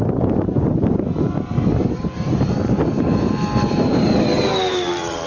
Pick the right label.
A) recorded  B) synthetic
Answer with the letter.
B